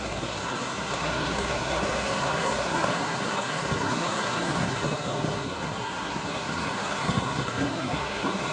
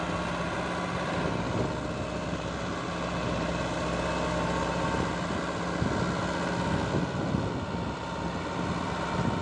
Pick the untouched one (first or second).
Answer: second